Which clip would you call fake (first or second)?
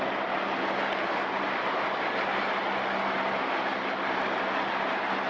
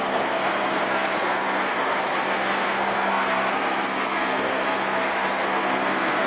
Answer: second